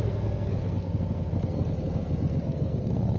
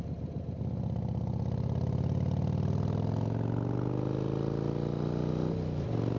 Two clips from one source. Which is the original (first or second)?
second